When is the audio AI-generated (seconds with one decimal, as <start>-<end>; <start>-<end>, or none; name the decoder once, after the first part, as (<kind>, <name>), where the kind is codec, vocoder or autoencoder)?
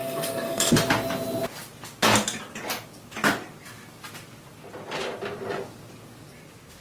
0.0-0.7 (codec, SNAC)